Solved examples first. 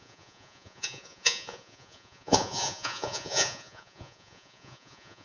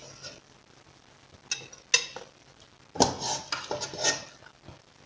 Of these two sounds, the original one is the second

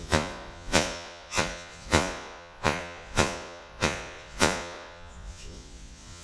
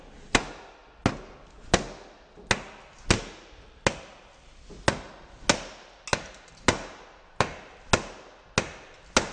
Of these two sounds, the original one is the second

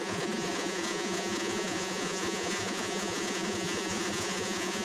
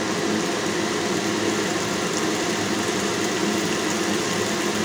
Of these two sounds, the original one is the second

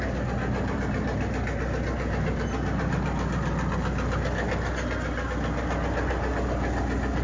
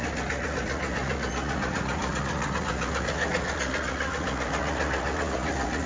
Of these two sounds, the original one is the first